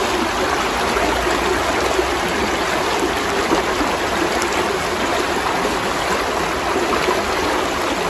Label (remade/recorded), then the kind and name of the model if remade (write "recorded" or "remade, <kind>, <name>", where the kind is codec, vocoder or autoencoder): recorded